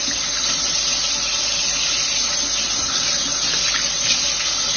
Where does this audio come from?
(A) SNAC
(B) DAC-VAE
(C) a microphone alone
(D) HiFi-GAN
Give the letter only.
C